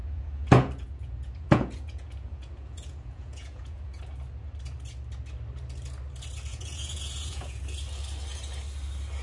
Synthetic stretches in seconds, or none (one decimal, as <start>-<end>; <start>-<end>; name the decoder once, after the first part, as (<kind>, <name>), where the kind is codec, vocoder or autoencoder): 0.0-4.0 (vocoder, Vocos); 6.5-7.6